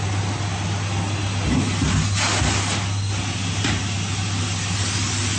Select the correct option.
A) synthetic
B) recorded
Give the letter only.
B